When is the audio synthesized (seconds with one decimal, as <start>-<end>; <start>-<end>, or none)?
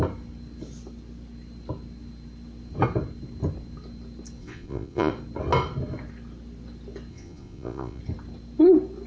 4.4-5.1; 7.1-8.0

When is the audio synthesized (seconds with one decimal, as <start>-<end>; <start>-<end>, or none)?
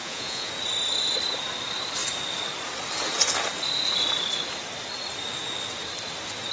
0.0-0.5